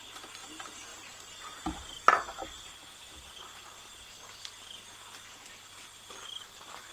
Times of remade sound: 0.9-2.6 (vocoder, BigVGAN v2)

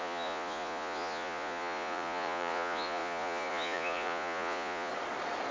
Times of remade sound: 0.0-4.9 (vocoder, Vocos)

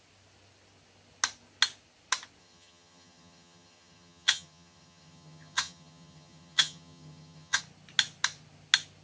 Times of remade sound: 2.4-7.6 (vocoder, HiFi-GAN)

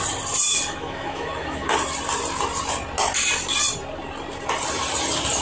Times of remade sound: 0.5-1.7 (autoencoder, DAC-VAE)

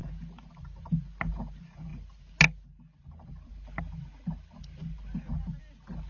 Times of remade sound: none

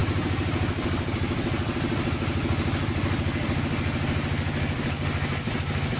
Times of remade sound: 0.0-3.6 (vocoder, BigVGAN v2)